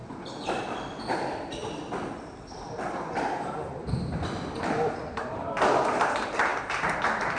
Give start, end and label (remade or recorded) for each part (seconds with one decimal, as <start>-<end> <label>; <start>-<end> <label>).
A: 0.0-0.6 recorded; 0.6-7.4 remade